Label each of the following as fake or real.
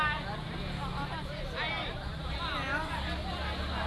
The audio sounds real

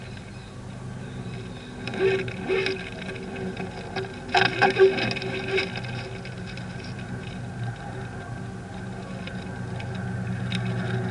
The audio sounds real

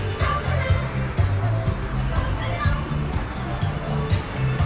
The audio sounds real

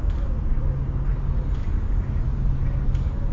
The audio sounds real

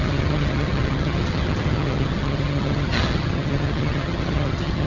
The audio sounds fake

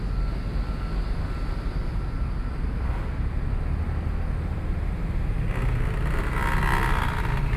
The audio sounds real